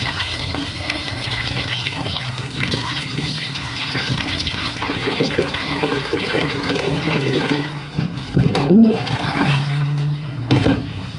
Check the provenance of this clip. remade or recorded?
remade